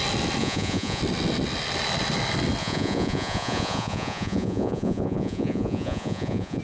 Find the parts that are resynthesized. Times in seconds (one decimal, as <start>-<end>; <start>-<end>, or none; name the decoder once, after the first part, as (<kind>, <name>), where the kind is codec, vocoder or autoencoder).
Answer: 0.4-1.0 (vocoder, Vocos); 2.6-6.6